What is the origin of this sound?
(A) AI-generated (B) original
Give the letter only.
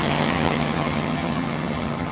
A